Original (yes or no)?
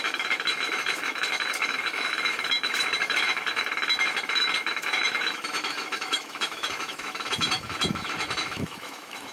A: no